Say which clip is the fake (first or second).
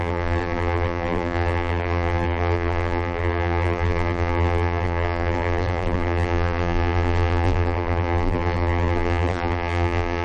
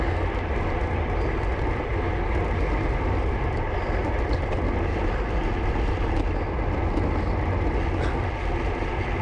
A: first